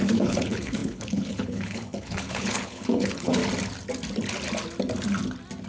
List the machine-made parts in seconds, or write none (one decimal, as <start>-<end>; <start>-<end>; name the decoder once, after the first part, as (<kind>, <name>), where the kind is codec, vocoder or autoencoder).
0.0-3.4 (codec, HILCodec)